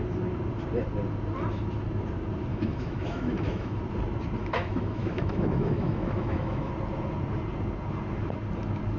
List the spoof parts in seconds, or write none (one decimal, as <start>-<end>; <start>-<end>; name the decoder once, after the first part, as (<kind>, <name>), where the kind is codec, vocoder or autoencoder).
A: 2.5-3.8 (autoencoder, DAC-VAE); 4.4-6.7